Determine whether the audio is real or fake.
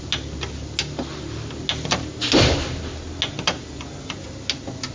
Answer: real